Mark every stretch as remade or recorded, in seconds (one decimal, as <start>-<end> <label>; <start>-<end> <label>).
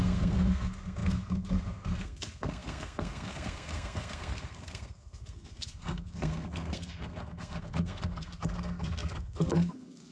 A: 0.0-10.1 remade